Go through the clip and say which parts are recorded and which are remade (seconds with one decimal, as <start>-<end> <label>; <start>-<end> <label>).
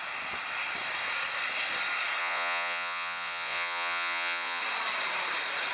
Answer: 0.0-2.2 recorded; 2.2-4.6 remade; 4.6-5.7 recorded